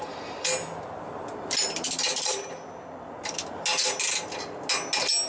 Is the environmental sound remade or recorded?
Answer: recorded